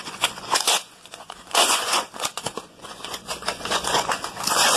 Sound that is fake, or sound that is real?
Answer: fake